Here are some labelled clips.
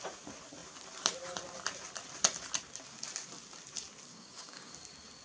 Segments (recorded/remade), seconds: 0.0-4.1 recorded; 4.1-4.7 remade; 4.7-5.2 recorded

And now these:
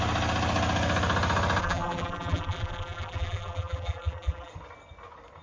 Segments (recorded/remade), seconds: 0.0-1.6 recorded; 1.6-4.5 remade; 4.5-5.4 recorded

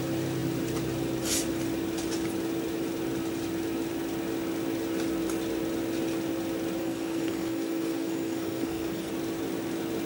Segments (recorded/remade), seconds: 0.0-6.8 recorded; 6.8-9.1 remade; 9.1-10.1 recorded

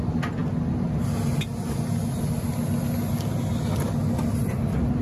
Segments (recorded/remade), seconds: 0.0-5.0 recorded

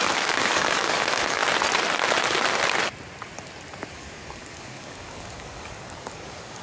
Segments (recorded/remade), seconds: 0.0-1.4 remade; 1.4-3.9 recorded; 3.9-6.6 remade